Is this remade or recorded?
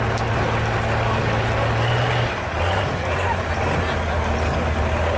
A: recorded